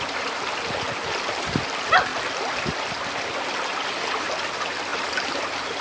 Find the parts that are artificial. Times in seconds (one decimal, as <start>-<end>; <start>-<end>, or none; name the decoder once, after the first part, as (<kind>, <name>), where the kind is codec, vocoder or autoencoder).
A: 4.9-5.8 (vocoder, BigVGAN v2)